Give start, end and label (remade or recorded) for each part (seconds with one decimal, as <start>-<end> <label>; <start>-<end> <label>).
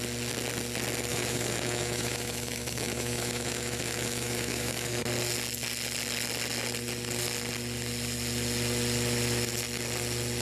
0.0-1.1 recorded; 1.1-5.0 remade; 5.0-10.4 recorded